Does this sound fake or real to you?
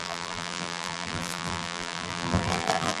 fake